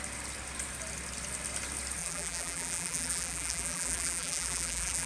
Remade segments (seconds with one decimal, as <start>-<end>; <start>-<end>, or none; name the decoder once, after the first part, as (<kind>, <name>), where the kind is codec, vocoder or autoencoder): 2.0-5.1 (vocoder, BigVGAN v2)